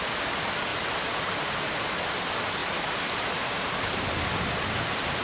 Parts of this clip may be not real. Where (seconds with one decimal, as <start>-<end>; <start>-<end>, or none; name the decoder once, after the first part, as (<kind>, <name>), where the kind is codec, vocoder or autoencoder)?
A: 0.7-1.9 (vocoder, BigVGAN v2); 2.6-3.7